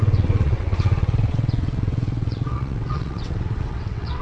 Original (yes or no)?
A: no